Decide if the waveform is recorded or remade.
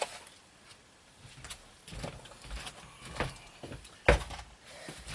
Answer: recorded